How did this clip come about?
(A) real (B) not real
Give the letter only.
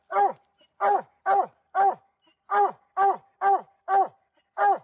A